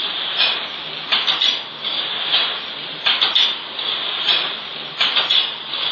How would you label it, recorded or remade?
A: remade